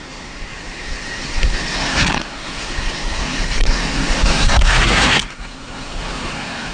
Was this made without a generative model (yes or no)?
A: no